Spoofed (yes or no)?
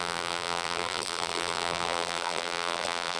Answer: yes